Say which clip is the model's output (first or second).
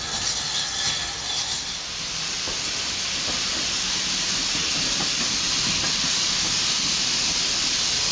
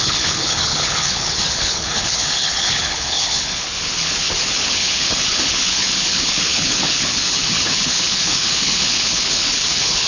second